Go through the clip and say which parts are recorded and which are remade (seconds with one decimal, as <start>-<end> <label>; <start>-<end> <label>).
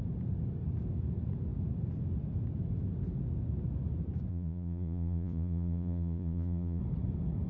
0.0-4.3 recorded; 4.3-6.8 remade; 6.8-7.5 recorded